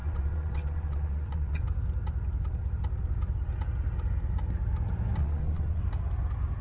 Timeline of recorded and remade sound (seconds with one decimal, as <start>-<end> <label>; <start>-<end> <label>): 0.0-1.6 remade; 1.6-5.2 recorded; 5.2-5.8 remade; 5.8-6.6 recorded